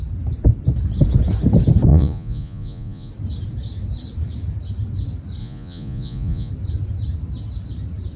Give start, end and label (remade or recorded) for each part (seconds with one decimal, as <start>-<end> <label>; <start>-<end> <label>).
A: 0.0-1.9 recorded; 1.9-3.1 remade; 3.1-5.4 recorded; 5.4-6.5 remade; 6.5-8.2 recorded